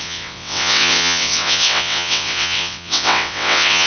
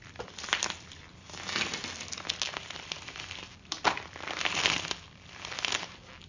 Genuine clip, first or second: second